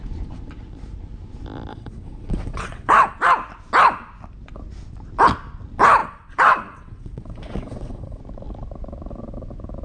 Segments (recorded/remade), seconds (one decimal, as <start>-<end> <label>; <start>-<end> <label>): 0.0-1.7 recorded; 1.7-3.2 remade; 3.2-6.0 recorded; 6.0-8.2 remade; 8.2-9.8 recorded